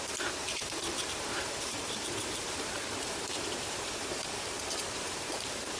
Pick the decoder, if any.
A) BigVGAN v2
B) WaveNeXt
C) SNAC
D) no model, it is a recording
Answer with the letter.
A